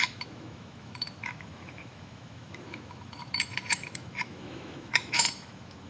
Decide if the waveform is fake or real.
fake